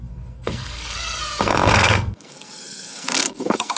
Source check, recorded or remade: remade